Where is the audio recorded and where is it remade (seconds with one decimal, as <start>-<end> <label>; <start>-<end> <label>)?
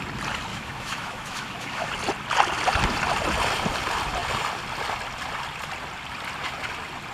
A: 0.0-0.5 recorded; 0.5-1.9 remade; 1.9-7.1 recorded